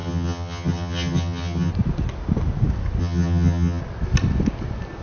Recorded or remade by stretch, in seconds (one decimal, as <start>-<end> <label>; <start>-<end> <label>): 0.0-1.7 remade; 1.7-3.0 recorded; 3.0-3.8 remade; 3.8-5.0 recorded